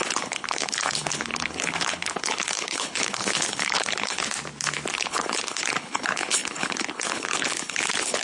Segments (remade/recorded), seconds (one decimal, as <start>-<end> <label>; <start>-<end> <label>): 0.0-4.2 remade; 4.2-4.9 recorded; 4.9-8.2 remade